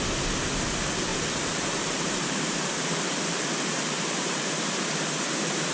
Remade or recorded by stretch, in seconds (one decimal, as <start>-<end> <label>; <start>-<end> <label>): 0.0-1.1 recorded; 1.1-4.5 remade; 4.5-5.7 recorded